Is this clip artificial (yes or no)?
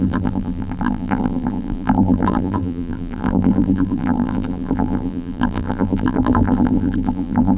yes